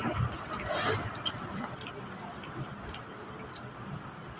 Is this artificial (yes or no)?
no